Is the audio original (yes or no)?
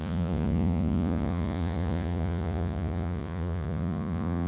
no